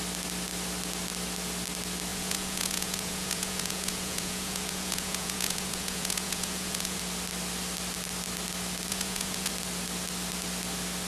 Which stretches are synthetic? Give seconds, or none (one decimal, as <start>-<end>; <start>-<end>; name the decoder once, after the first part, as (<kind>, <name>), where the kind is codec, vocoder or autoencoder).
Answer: 2.1-7.0 (vocoder, Vocos); 8.9-9.5

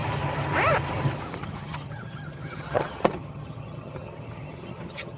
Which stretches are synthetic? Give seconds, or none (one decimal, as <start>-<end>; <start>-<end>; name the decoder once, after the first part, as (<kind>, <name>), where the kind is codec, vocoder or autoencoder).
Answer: 1.4-5.2 (vocoder, HiFi-GAN)